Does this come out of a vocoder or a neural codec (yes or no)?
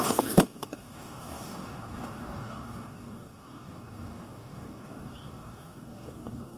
yes